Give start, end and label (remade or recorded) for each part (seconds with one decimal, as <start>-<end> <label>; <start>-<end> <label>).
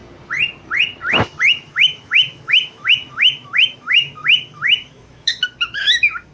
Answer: 0.0-1.5 recorded; 1.5-6.3 remade